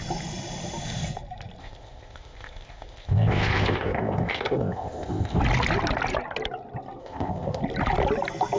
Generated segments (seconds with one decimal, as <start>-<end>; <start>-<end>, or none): 1.6-5.4; 7.0-7.6